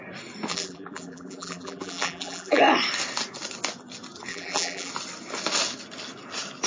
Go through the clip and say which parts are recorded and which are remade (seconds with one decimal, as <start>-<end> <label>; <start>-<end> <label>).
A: 0.0-0.5 recorded; 0.5-2.6 remade; 2.6-4.3 recorded; 4.3-4.9 remade; 4.9-6.7 recorded